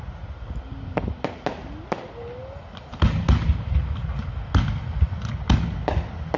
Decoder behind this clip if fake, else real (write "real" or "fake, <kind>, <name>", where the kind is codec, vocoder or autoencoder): real